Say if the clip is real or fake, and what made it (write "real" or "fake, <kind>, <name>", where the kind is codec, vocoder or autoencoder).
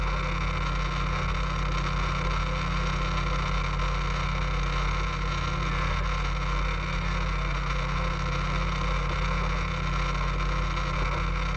real